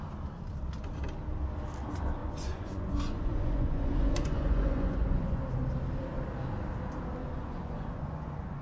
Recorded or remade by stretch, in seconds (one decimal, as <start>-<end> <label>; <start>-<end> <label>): 0.0-2.2 recorded; 2.2-5.4 remade; 5.4-7.2 recorded; 7.2-8.6 remade

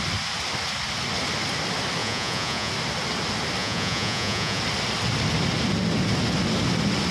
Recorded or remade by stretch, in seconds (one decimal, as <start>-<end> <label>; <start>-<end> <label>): 0.0-2.0 recorded; 2.0-2.7 remade; 2.7-3.6 recorded; 3.6-4.6 remade; 4.6-7.1 recorded

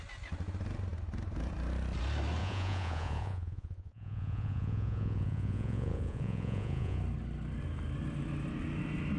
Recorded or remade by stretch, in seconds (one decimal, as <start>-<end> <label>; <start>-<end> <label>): 0.0-2.4 recorded; 2.4-7.0 remade; 7.0-9.2 recorded

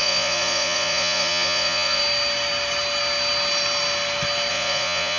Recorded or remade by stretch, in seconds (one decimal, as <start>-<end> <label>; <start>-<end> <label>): 0.0-2.0 remade; 2.0-4.5 recorded; 4.5-5.2 remade

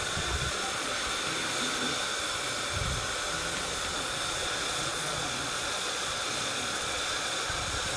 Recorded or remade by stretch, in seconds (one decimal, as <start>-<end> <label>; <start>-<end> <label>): 0.0-0.9 remade; 0.9-3.9 recorded; 3.9-8.0 remade

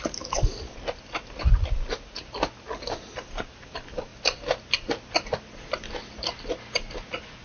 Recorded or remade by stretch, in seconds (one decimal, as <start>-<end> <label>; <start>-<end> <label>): 0.0-7.4 recorded